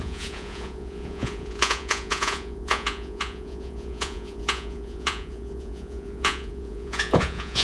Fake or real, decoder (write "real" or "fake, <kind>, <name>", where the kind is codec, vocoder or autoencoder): fake, vocoder, Vocos